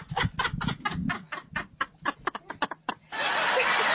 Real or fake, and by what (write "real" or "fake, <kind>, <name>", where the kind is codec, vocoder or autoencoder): real